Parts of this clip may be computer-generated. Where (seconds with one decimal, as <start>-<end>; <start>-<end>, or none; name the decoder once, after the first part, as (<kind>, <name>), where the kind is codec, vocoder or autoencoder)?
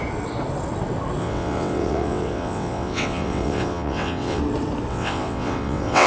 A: 1.2-4.4 (vocoder, WaveNeXt); 4.9-6.1